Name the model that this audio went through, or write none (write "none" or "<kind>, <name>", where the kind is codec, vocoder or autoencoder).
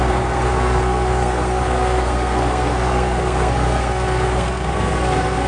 codec, SNAC